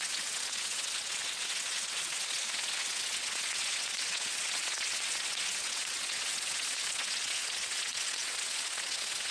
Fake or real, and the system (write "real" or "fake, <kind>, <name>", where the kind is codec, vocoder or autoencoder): fake, vocoder, WaveNeXt